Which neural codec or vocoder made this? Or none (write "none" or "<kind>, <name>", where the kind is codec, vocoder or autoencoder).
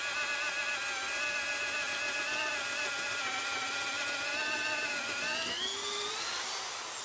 none